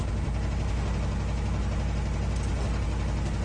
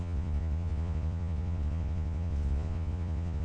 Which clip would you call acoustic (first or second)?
first